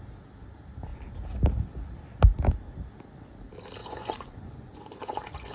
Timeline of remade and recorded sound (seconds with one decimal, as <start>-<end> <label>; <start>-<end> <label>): 0.0-3.8 recorded; 3.8-5.5 remade